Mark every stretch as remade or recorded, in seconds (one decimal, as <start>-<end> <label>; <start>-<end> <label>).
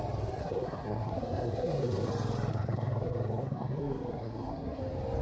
0.0-0.4 recorded; 0.4-2.1 remade; 2.1-2.5 recorded; 2.5-4.8 remade; 4.8-5.2 recorded